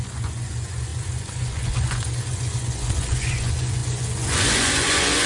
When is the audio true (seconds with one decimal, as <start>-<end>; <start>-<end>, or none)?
none